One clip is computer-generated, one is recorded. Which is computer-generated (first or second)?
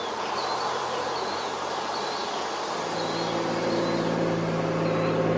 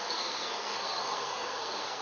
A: second